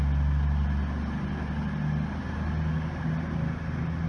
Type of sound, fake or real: real